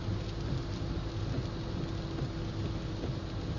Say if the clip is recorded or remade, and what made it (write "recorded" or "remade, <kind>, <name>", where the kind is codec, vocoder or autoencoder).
recorded